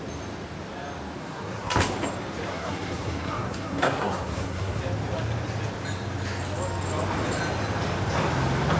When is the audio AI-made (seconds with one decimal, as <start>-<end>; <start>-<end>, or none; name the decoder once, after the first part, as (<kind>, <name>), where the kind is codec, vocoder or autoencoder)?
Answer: 1.2-1.7 (codec, SNAC); 2.5-4.8